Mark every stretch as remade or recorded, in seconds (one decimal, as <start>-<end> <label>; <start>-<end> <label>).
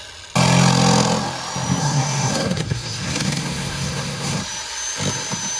0.0-1.8 recorded; 1.8-4.4 remade; 4.4-5.6 recorded